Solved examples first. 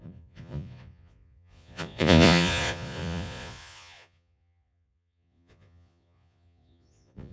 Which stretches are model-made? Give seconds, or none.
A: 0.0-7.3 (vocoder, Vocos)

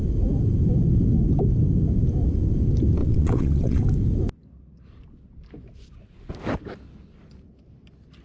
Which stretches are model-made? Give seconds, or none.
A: 3.0-3.8 (vocoder, WaveNeXt)

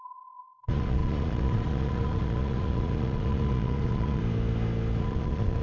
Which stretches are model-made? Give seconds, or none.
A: 0.0-4.2 (vocoder, Vocos); 5.0-5.6